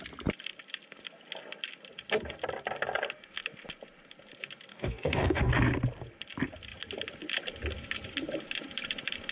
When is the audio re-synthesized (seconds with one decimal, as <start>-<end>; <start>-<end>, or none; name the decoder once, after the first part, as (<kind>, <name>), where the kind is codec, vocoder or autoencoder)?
4.7-5.5 (codec, DAC)